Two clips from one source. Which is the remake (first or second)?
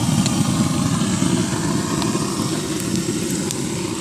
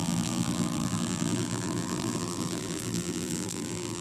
second